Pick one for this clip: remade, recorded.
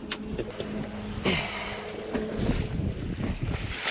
recorded